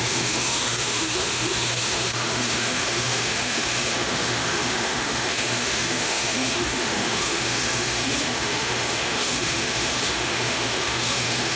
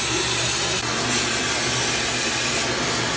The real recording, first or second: second